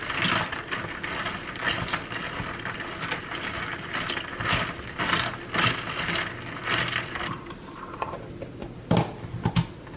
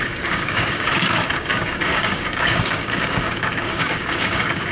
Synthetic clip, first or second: second